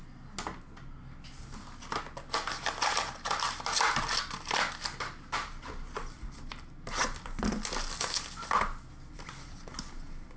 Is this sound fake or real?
real